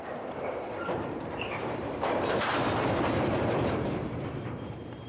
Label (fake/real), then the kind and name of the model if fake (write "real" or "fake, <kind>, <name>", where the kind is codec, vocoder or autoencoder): fake, vocoder, BigVGAN v2